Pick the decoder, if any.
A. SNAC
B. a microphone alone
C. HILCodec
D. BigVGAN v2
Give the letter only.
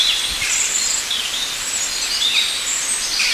D